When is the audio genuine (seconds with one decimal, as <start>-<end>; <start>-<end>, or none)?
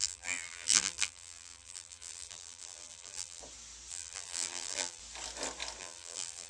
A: 3.4-3.9; 5.0-5.8